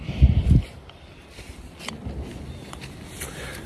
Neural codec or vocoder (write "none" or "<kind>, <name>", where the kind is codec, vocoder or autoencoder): vocoder, BigVGAN v2